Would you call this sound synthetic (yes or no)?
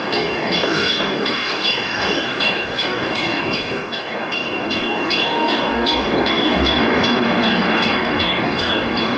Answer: yes